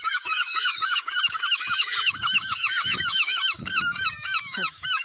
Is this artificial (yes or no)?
yes